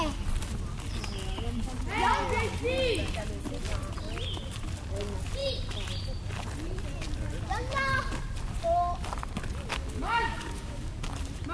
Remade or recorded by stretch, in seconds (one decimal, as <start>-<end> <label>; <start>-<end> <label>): 0.0-9.7 recorded; 9.7-11.0 remade; 11.0-11.5 recorded